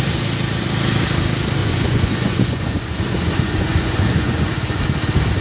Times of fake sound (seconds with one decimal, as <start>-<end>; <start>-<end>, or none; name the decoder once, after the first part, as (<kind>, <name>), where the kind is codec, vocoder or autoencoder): 1.6-4.8 (vocoder, Vocos)